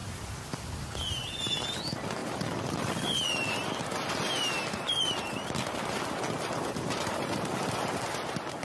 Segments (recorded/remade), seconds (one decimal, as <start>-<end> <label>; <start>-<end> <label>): 0.0-8.6 recorded

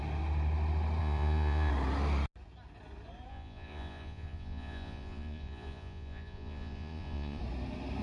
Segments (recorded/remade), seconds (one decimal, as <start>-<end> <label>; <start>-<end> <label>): 0.0-1.0 recorded; 1.0-1.7 remade; 1.7-3.3 recorded; 3.3-7.4 remade; 7.4-8.0 recorded

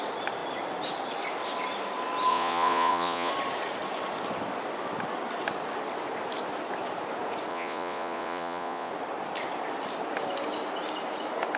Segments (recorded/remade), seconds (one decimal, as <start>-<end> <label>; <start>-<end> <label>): 0.0-2.3 recorded; 2.3-3.3 remade; 3.3-7.5 recorded; 7.5-8.9 remade; 8.9-11.6 recorded

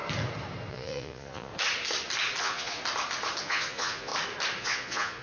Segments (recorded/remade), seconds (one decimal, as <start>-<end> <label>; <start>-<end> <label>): 0.0-0.7 recorded; 0.7-1.5 remade; 1.5-2.4 recorded; 2.4-2.8 remade; 2.8-3.4 recorded; 3.4-4.1 remade; 4.1-4.6 recorded; 4.6-5.2 remade

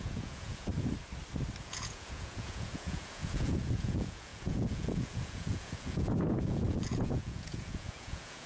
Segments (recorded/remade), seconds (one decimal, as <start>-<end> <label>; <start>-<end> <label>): 0.0-0.7 remade; 0.7-1.6 recorded; 1.6-8.5 remade

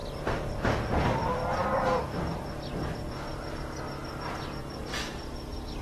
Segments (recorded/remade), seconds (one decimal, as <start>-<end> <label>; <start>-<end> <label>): 0.0-5.8 recorded